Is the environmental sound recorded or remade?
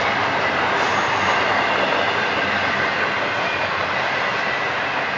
recorded